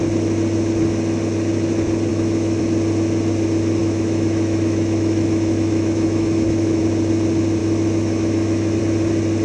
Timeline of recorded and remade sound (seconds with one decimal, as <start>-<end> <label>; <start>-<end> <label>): 0.0-2.1 recorded; 2.1-2.6 remade; 2.6-3.8 recorded; 3.8-6.8 remade; 6.8-7.6 recorded; 7.6-8.8 remade; 8.8-9.4 recorded